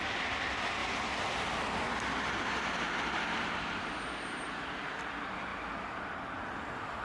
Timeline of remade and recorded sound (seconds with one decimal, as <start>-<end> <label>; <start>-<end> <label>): 0.0-7.0 recorded